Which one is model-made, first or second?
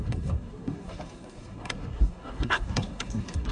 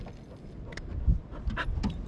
first